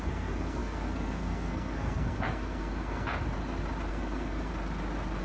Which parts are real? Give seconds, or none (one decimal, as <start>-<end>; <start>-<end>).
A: 3.1-3.9; 4.5-5.2